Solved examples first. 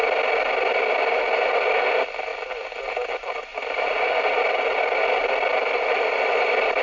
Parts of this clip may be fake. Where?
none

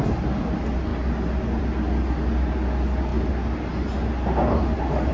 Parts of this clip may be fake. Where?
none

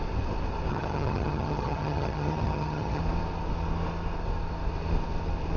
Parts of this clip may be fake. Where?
0.7-3.0